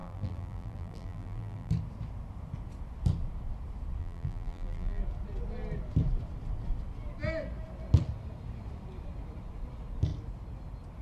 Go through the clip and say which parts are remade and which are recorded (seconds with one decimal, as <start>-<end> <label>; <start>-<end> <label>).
0.0-1.7 remade; 1.7-4.0 recorded; 4.0-5.0 remade; 5.0-11.0 recorded